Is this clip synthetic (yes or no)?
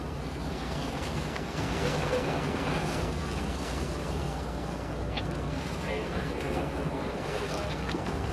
yes